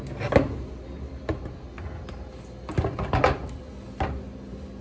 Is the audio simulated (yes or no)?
no